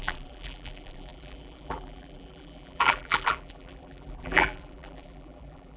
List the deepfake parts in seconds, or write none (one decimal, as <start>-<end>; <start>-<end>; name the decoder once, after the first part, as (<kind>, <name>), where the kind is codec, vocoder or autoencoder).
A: 0.0-5.8 (vocoder, BigVGAN v2)